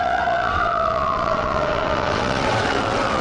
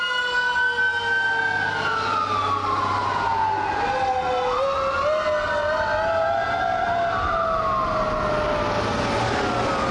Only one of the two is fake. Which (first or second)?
first